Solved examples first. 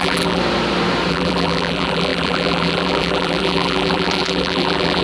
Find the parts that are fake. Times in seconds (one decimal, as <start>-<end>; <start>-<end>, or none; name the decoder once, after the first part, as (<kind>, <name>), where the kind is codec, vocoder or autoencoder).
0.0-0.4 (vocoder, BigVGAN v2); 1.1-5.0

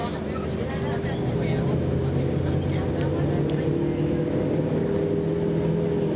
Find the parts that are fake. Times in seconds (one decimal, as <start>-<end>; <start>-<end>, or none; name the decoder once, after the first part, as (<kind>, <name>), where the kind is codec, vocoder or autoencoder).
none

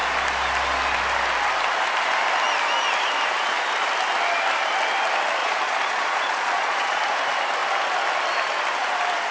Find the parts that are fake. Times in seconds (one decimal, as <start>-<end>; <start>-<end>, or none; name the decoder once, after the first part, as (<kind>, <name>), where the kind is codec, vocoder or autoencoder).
5.4-7.0 (vocoder, Vocos)

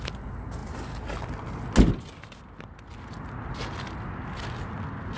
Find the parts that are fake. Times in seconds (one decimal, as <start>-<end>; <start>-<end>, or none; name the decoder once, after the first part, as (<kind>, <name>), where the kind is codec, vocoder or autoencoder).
none

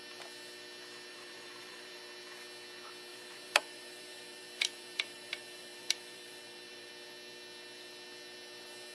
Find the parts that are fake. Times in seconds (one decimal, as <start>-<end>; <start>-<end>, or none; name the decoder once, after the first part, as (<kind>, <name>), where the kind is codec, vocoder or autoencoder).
1.1-2.0 (vocoder, BigVGAN v2); 3.1-6.9

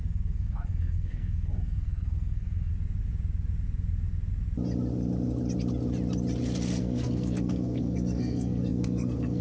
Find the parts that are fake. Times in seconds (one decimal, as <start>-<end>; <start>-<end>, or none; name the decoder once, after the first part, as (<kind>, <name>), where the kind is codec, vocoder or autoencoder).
0.0-2.7 (codec, SNAC); 6.8-9.4

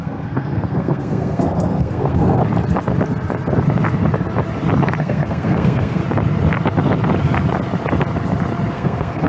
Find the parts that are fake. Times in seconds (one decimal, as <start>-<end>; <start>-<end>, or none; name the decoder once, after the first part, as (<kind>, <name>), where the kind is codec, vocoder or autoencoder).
0.0-2.4 (codec, SNAC); 5.0-6.0; 8.7-9.3